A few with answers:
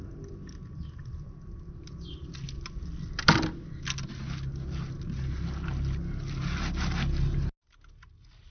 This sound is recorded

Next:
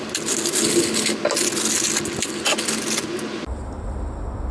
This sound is recorded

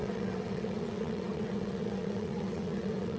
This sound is remade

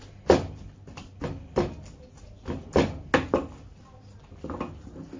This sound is recorded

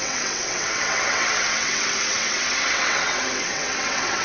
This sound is remade